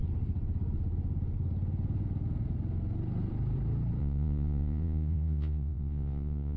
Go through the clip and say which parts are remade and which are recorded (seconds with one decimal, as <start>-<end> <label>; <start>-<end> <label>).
0.0-4.0 recorded; 4.0-6.6 remade